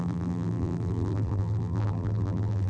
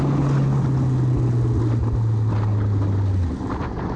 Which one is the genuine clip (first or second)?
second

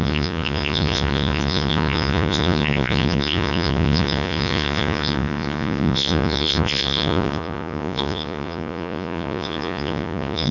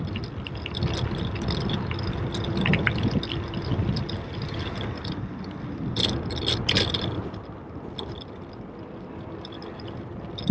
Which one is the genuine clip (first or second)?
second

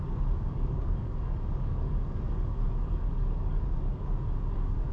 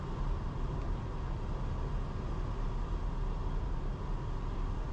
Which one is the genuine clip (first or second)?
second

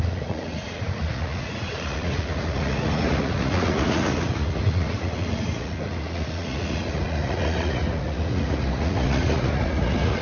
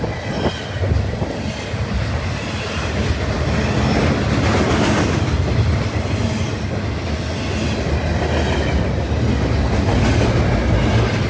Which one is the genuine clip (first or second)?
second